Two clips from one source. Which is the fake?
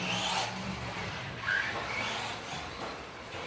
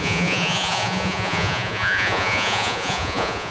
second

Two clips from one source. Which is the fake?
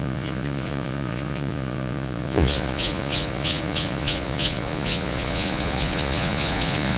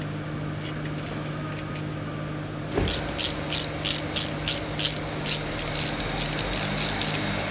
first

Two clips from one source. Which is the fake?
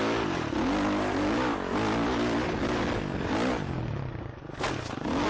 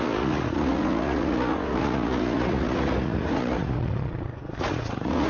second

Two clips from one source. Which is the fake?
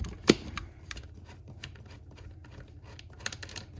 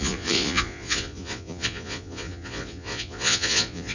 second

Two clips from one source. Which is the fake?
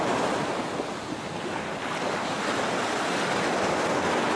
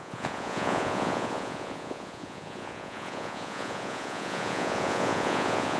second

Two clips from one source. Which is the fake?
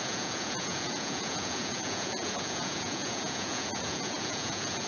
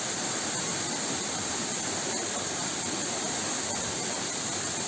first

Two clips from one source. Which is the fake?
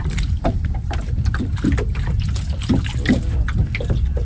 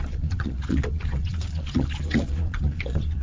second